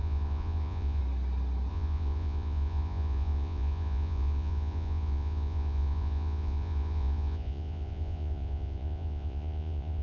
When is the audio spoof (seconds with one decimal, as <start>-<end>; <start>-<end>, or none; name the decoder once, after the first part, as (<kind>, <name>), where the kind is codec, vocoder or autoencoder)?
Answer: 0.0-1.0 (vocoder, Vocos); 1.7-10.0